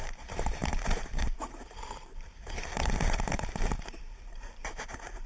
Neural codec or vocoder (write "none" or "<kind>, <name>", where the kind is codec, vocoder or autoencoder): vocoder, BigVGAN v2